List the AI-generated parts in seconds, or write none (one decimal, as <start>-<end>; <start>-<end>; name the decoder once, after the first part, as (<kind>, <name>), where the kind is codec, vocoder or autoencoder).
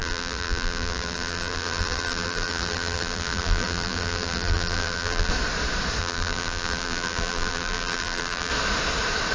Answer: 0.0-5.3 (vocoder, BigVGAN v2); 6.0-8.5